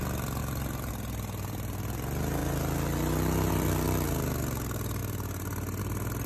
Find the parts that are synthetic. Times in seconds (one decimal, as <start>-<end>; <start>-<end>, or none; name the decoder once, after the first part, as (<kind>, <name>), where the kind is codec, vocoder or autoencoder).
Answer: none